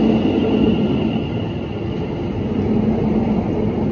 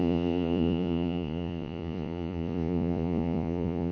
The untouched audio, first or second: first